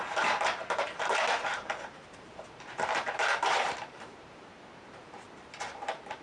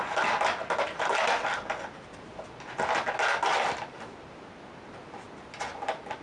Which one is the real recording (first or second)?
second